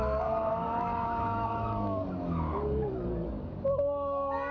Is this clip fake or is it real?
fake